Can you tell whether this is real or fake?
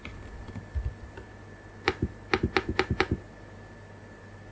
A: real